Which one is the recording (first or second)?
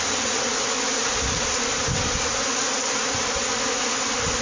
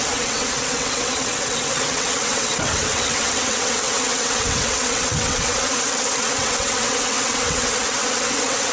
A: first